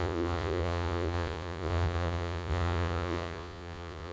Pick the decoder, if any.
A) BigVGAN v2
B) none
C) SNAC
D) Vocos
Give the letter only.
D